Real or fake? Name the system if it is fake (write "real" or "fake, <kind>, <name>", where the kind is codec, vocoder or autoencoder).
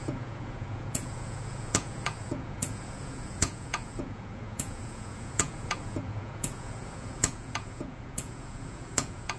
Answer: fake, vocoder, Vocos